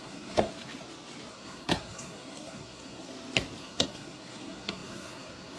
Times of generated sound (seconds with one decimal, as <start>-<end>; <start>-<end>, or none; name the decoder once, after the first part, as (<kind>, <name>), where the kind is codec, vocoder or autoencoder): 0.0-0.5 (codec, SNAC); 1.3-3.1; 3.6-5.6